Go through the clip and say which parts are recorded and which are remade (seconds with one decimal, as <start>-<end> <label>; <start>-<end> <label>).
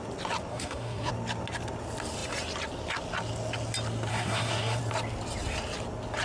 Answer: 0.0-0.5 recorded; 0.5-1.1 remade; 1.1-4.1 recorded; 4.1-4.8 remade; 4.8-6.2 recorded